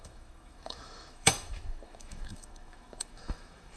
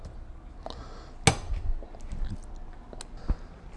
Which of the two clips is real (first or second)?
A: second